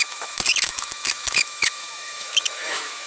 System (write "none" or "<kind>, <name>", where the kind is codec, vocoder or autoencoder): autoencoder, DAC-VAE